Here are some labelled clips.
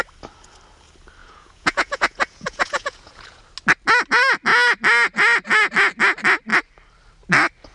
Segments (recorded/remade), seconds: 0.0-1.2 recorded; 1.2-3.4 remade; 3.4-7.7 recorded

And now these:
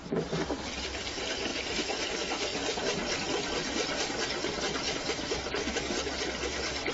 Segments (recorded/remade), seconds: 0.0-6.9 recorded

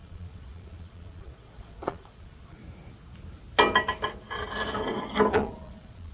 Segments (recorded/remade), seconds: 0.0-2.6 remade; 2.6-5.3 recorded; 5.3-6.1 remade

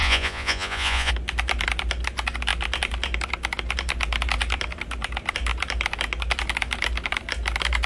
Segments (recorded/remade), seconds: 0.0-1.1 remade; 1.1-7.9 recorded

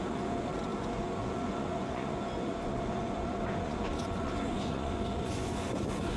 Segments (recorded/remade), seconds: 0.0-6.2 remade

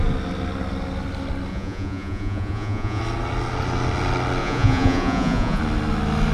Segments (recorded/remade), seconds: 0.0-1.5 recorded; 1.5-3.0 remade; 3.0-4.4 recorded; 4.4-5.6 remade; 5.6-6.3 recorded

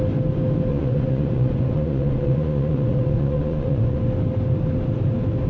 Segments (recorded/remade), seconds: 0.0-0.7 recorded; 0.7-4.0 remade; 4.0-5.5 recorded

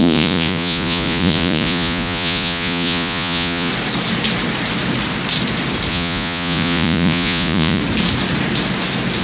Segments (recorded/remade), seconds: 0.0-3.7 remade; 3.7-5.9 recorded; 5.9-7.8 remade; 7.8-9.2 recorded